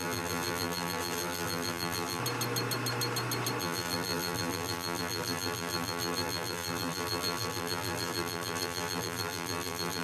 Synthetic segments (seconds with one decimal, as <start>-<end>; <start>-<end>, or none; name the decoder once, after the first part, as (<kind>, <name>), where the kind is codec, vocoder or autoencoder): 0.0-2.2 (vocoder, BigVGAN v2); 3.6-10.0